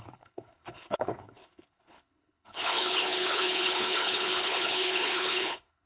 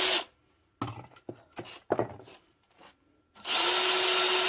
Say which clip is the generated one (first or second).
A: first